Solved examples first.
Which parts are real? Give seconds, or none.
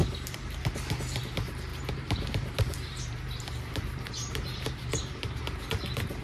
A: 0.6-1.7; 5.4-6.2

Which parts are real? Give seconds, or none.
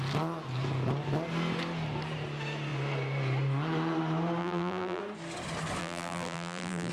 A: 0.0-4.4; 5.0-5.8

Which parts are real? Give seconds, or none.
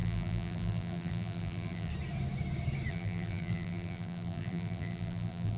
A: 1.9-2.9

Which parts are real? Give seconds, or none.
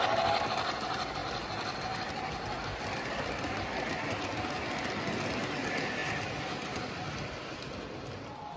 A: 0.0-8.6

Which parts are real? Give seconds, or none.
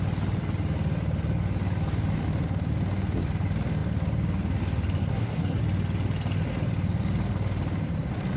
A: 0.0-5.0; 5.6-8.4